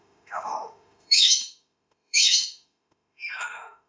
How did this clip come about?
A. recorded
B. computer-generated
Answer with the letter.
B